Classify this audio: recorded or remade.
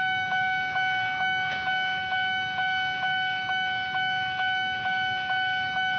remade